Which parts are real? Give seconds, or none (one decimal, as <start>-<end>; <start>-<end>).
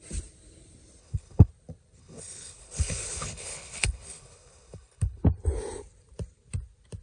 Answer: 0.0-1.0; 1.5-2.0; 5.2-7.0